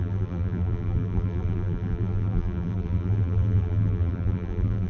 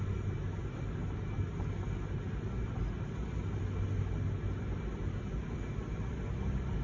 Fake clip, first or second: first